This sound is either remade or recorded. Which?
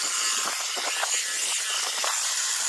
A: remade